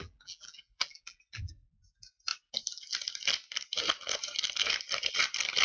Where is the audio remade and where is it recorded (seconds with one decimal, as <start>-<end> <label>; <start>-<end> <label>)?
0.0-1.5 remade; 1.5-5.6 recorded